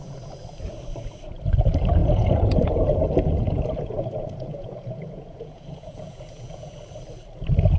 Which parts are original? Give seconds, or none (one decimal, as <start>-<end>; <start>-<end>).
0.0-2.0; 6.7-7.8